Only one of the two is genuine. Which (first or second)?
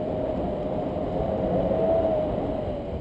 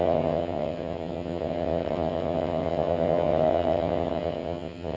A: first